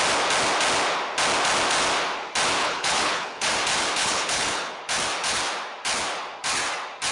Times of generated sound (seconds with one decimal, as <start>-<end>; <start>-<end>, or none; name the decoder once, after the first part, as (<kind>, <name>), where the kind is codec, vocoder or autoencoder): 2.6-3.5 (codec, HILCodec); 4.0-4.8